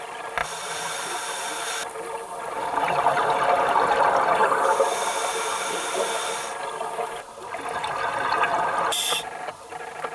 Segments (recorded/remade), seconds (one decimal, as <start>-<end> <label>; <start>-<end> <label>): 0.0-10.1 recorded